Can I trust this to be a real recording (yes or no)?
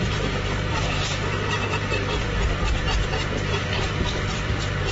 no